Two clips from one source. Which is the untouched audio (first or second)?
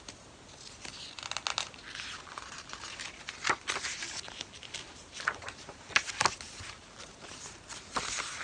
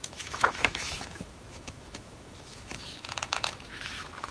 first